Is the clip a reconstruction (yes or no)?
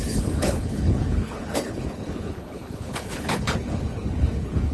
yes